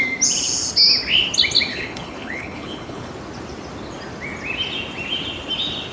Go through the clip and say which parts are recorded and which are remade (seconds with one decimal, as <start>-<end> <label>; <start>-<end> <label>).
0.0-1.7 recorded; 1.7-3.1 remade; 3.1-5.9 recorded